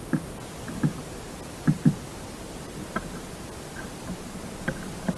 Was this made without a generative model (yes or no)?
yes